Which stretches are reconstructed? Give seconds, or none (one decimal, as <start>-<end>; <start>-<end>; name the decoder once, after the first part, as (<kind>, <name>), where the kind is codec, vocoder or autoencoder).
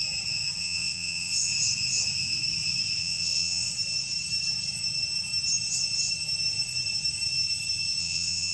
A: 0.6-1.5 (vocoder, WaveNeXt); 3.0-3.7; 8.0-8.5